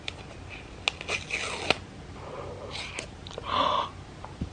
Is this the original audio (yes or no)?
yes